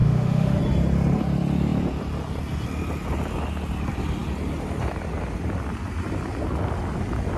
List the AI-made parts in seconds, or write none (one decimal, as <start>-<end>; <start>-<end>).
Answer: 0.0-0.6